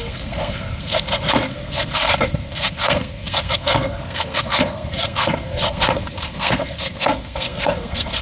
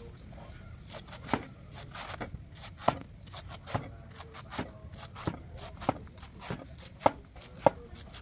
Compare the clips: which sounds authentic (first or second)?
second